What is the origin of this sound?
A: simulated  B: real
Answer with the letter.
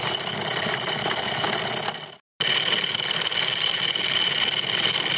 B